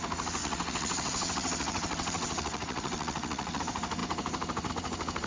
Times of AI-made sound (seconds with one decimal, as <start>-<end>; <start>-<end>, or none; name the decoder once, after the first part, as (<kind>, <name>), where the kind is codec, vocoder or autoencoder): 0.4-3.6 (vocoder, WaveNeXt)

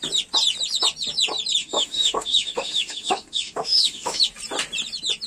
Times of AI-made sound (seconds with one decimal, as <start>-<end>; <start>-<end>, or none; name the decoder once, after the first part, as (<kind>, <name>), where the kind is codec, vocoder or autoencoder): 1.6-4.2 (autoencoder, DAC-VAE)

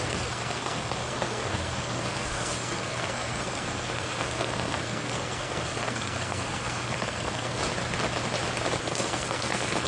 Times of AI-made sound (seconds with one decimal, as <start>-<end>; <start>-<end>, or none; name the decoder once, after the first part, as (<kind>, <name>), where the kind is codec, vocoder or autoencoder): 0.0-7.6 (codec, SNAC); 8.8-9.9